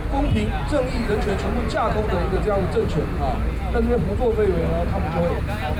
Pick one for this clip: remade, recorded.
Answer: recorded